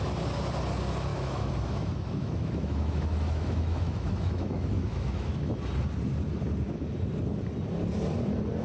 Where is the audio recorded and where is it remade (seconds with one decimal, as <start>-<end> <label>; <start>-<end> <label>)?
0.0-1.1 recorded; 1.1-5.4 remade; 5.4-8.6 recorded